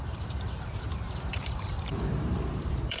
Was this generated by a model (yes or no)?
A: yes